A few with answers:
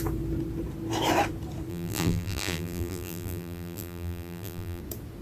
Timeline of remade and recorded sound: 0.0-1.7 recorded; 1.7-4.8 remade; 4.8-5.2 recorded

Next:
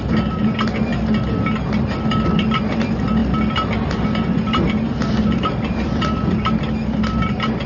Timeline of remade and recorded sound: 0.0-0.9 remade; 0.9-1.9 recorded; 1.9-3.2 remade; 3.2-5.1 recorded; 5.1-7.7 remade